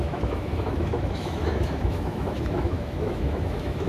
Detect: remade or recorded remade